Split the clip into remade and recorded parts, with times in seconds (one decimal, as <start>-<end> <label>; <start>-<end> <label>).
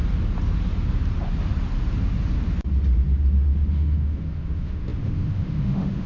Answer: 0.0-3.7 recorded; 3.7-6.1 remade